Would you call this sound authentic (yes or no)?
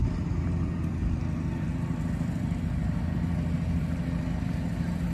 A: yes